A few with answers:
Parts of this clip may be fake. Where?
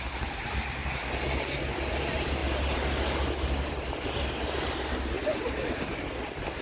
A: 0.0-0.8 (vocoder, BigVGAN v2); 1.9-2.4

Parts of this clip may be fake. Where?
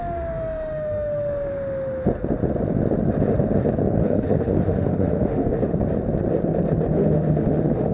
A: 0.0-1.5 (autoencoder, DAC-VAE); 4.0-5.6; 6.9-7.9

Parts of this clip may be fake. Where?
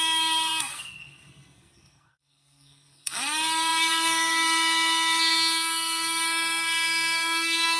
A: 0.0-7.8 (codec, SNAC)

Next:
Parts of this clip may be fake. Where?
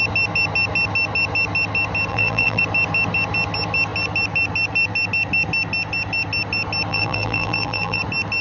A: 2.1-2.6 (vocoder, BigVGAN v2); 6.9-8.0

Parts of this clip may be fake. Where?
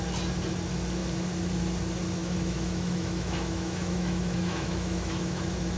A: 2.2-5.8 (autoencoder, DAC-VAE)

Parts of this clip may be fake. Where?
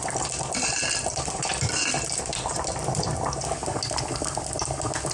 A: 0.0-3.1 (vocoder, BigVGAN v2)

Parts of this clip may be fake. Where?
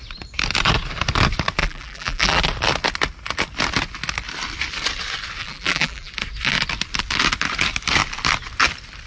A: 1.6-2.4 (vocoder, BigVGAN v2); 5.4-6.1